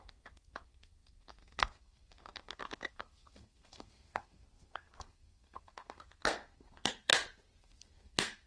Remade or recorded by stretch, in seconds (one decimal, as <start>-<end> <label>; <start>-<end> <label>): 0.0-7.1 remade; 7.1-7.6 recorded; 7.6-8.5 remade